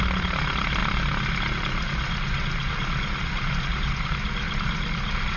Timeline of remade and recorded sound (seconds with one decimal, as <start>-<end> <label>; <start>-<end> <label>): 0.0-5.4 recorded